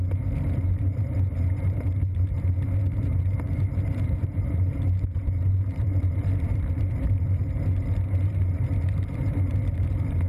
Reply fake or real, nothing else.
fake